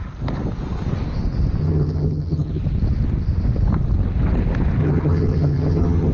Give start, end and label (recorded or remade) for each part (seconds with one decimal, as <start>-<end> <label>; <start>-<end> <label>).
0.0-1.6 recorded; 1.6-2.6 remade; 2.6-4.8 recorded; 4.8-6.1 remade